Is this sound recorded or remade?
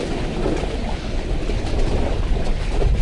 recorded